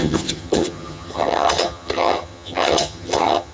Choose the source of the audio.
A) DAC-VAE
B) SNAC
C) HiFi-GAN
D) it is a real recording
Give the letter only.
C